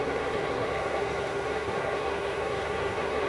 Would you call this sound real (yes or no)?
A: no